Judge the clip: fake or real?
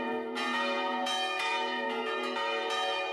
fake